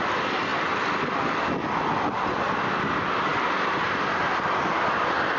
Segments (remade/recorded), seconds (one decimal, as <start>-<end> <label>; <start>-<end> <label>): 0.0-5.4 remade

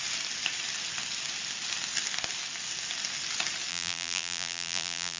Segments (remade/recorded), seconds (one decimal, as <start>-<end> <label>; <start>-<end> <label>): 0.0-3.7 recorded; 3.7-5.2 remade

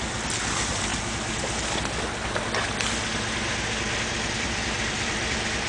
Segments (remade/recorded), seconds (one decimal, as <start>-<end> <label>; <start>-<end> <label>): 0.0-0.9 remade; 0.9-4.3 recorded; 4.3-5.7 remade

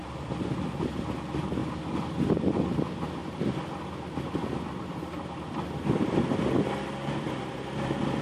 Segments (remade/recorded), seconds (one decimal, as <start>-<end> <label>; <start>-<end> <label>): 0.0-1.6 remade; 1.6-2.3 recorded; 2.3-3.2 remade; 3.2-4.7 recorded; 4.7-8.2 remade

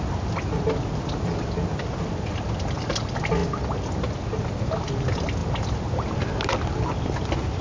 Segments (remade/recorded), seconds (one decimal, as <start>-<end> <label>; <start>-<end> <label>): 0.0-7.6 recorded

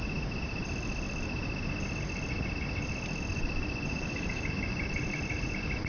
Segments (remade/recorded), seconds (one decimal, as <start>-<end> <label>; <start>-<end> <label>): 0.0-3.3 recorded; 3.3-5.3 remade; 5.3-5.9 recorded

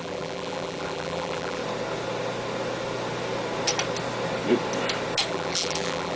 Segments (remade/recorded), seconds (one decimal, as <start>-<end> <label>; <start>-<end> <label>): 0.0-1.6 remade; 1.6-5.3 recorded; 5.3-6.2 remade